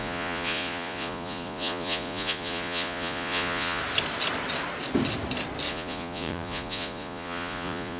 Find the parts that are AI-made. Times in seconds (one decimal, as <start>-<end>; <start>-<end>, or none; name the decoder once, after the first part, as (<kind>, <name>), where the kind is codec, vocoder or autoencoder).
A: 0.0-3.8 (vocoder, Vocos); 5.7-8.0